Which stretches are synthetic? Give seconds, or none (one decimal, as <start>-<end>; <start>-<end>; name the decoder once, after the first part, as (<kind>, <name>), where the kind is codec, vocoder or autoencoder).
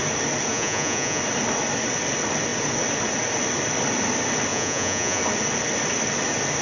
0.5-1.2 (vocoder, Vocos); 4.5-5.2